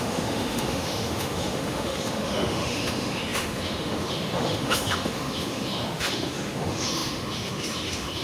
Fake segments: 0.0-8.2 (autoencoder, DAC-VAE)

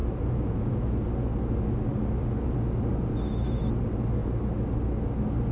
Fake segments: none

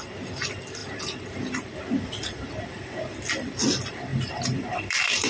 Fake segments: 4.1-5.3 (vocoder, BigVGAN v2)